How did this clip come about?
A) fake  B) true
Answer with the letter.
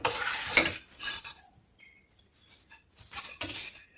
B